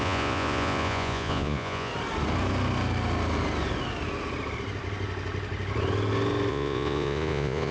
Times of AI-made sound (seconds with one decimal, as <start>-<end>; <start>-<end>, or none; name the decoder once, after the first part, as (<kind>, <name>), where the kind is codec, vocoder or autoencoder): 0.0-1.9 (vocoder, Vocos); 6.5-7.7